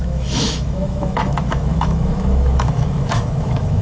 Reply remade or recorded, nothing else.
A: remade